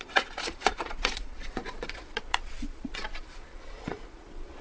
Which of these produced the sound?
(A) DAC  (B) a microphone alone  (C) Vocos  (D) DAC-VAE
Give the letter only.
C